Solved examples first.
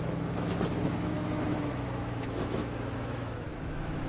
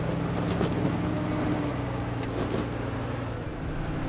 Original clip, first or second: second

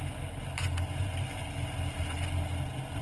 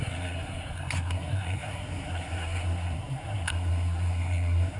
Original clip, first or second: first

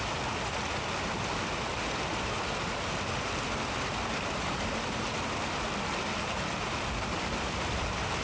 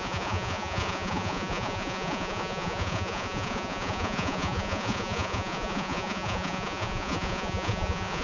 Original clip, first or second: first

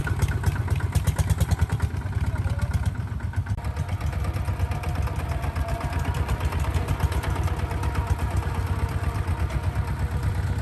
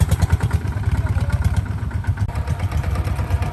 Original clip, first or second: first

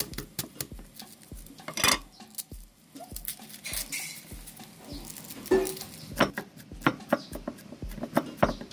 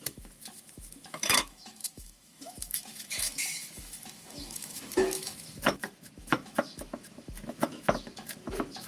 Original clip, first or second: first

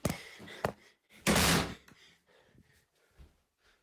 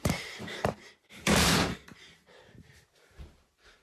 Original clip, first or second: first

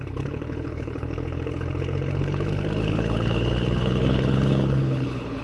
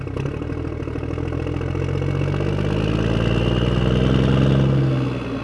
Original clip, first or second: second